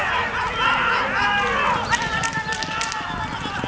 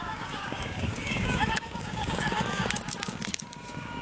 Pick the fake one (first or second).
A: second